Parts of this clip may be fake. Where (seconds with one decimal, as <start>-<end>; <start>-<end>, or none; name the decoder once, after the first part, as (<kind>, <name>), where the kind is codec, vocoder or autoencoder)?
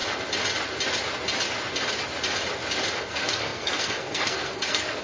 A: 3.0-5.0 (codec, SNAC)